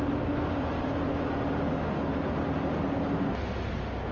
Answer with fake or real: real